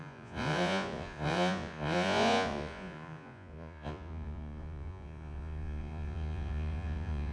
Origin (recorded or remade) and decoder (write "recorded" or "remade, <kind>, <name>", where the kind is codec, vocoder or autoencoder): remade, vocoder, Vocos